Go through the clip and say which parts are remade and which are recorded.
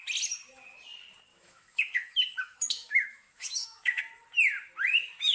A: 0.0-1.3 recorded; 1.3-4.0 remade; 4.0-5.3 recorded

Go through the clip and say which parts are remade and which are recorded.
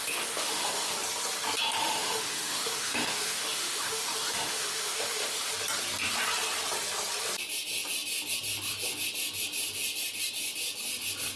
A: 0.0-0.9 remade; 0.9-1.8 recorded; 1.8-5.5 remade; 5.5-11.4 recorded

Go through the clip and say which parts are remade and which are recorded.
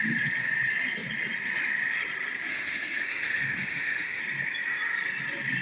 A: 0.0-2.5 recorded; 2.5-4.2 remade; 4.2-5.6 recorded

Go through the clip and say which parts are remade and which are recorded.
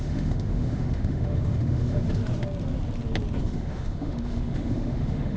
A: 0.0-2.2 remade; 2.2-3.4 recorded; 3.4-5.4 remade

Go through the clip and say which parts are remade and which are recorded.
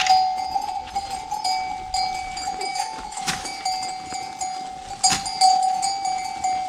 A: 0.0-2.7 recorded; 2.7-3.6 remade; 3.6-6.7 recorded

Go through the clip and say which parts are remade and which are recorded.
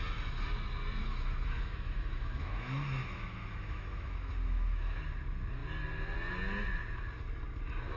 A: 0.0-1.0 recorded; 1.0-5.0 remade; 5.0-8.0 recorded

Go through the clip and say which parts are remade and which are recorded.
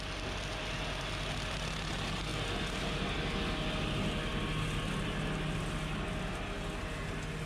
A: 0.0-7.5 recorded